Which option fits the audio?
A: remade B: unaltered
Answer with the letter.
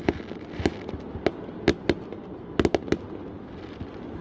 B